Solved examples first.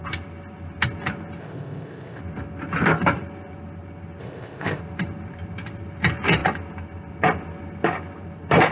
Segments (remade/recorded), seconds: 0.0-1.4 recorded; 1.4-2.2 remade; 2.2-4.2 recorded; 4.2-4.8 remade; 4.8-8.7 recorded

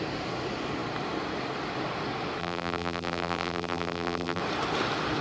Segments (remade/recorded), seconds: 0.0-2.4 recorded; 2.4-4.4 remade; 4.4-5.2 recorded

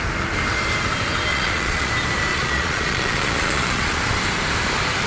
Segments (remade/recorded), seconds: 0.0-1.3 recorded; 1.3-1.9 remade; 1.9-2.3 recorded; 2.3-4.0 remade; 4.0-5.1 recorded

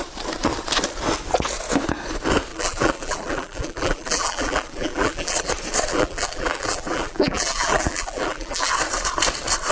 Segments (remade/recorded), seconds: 0.0-2.5 recorded; 2.5-5.5 remade; 5.5-5.9 recorded; 5.9-8.7 remade; 8.7-9.7 recorded

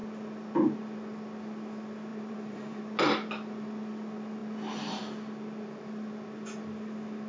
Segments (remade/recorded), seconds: 0.0-2.1 recorded; 2.1-2.8 remade; 2.8-7.3 recorded